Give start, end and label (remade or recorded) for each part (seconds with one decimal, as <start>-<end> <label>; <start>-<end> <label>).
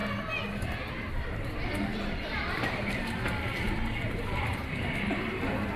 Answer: 0.0-1.9 recorded; 1.9-4.9 remade; 4.9-5.8 recorded